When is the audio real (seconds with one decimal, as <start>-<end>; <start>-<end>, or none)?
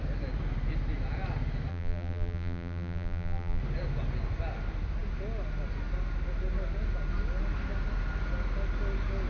0.0-1.7; 3.6-9.3